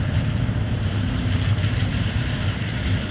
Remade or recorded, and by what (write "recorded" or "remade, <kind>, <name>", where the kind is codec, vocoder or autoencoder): remade, vocoder, BigVGAN v2